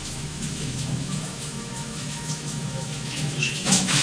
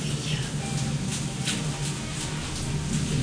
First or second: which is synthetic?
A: first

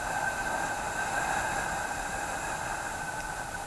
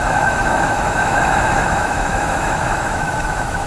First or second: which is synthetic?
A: second